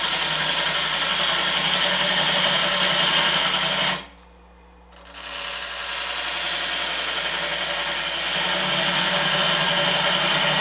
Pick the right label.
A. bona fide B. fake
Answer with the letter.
A